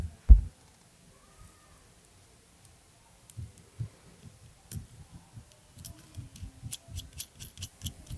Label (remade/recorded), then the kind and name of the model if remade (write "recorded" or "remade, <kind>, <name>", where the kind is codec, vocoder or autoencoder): recorded